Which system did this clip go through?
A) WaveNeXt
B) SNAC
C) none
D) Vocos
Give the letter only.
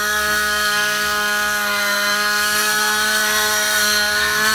B